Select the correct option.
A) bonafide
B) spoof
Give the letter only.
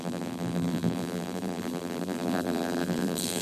B